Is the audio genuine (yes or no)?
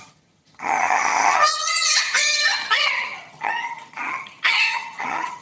no